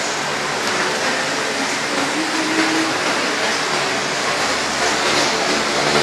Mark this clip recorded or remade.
recorded